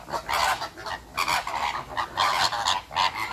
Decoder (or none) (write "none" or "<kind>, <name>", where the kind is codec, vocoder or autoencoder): none